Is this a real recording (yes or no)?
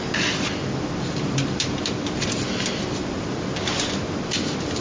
yes